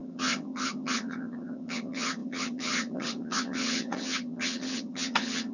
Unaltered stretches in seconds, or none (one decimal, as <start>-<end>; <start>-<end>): none